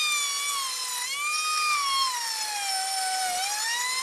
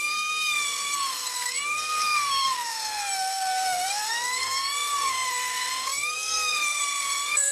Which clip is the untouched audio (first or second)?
first